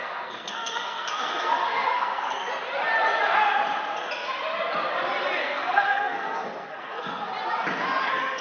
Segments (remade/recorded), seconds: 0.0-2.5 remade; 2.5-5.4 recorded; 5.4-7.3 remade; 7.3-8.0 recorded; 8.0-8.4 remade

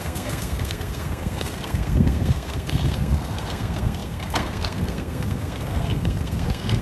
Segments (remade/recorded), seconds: 0.0-6.8 remade

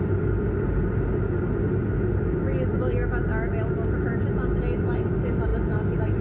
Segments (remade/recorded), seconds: 0.0-6.2 recorded

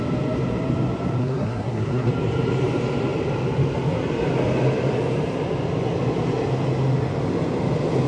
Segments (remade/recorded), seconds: 0.0-1.2 recorded; 1.2-2.1 remade; 2.1-8.1 recorded

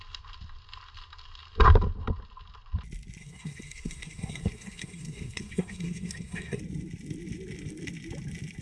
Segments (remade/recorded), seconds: 0.0-3.2 recorded; 3.2-6.6 remade; 6.6-8.6 recorded

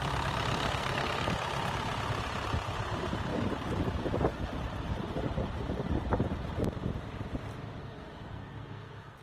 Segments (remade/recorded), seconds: 0.0-0.5 recorded; 0.5-1.3 remade; 1.3-7.8 recorded; 7.8-9.2 remade